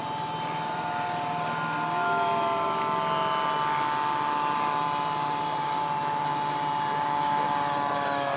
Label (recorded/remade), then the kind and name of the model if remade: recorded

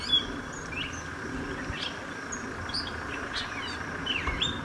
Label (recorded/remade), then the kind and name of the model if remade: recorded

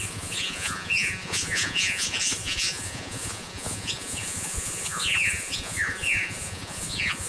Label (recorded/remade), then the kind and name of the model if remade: remade, vocoder, Vocos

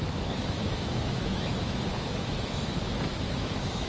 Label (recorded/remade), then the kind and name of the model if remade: remade, autoencoder, DAC-VAE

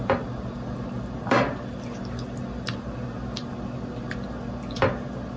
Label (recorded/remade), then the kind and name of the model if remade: recorded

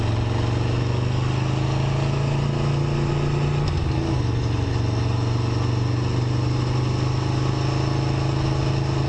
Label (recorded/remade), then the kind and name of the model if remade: recorded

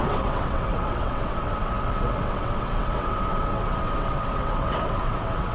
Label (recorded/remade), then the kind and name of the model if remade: remade, vocoder, WaveNeXt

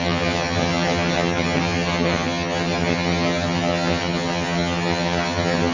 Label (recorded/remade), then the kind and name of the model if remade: remade, vocoder, HiFi-GAN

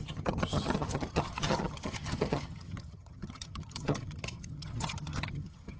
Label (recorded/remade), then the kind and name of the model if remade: remade, vocoder, HiFi-GAN